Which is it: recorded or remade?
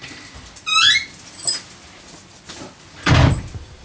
recorded